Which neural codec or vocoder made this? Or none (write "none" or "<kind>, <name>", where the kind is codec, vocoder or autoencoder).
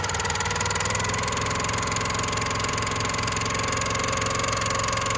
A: none